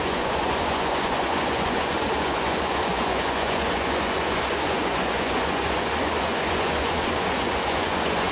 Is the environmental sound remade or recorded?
remade